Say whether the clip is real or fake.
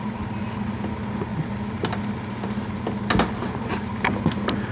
real